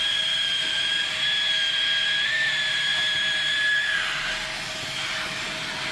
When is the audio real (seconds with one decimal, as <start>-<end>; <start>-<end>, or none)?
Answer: 0.0-5.9